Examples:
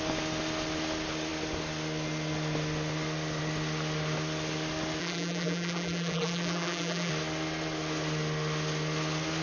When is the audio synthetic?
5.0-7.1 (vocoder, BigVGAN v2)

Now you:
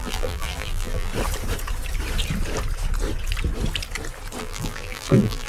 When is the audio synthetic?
0.0-1.1 (vocoder, BigVGAN v2); 4.4-5.5

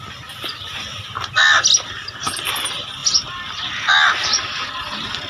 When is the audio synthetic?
none